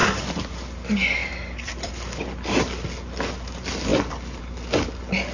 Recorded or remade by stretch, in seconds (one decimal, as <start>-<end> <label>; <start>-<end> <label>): 0.0-0.5 remade; 0.5-1.2 recorded; 1.2-1.9 remade; 1.9-3.9 recorded; 3.9-4.4 remade; 4.4-5.3 recorded